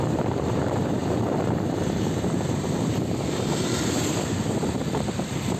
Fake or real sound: fake